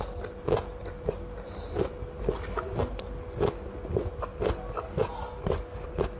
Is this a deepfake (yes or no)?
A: no